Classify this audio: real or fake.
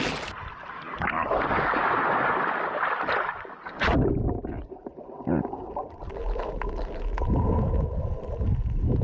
real